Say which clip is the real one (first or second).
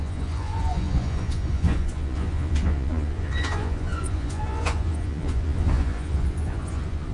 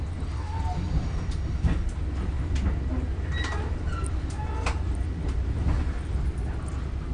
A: second